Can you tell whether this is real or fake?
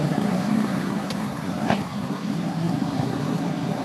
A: fake